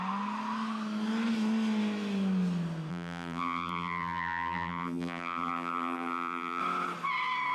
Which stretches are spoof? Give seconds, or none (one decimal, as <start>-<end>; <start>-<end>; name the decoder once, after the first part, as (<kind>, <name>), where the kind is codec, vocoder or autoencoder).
2.9-6.6 (vocoder, BigVGAN v2)